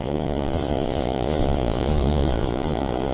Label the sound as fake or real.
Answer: fake